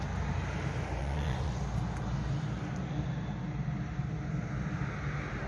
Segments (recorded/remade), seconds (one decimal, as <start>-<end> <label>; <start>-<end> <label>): 0.0-1.0 recorded; 1.0-1.6 remade; 1.6-5.5 recorded